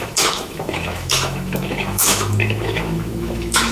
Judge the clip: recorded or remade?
remade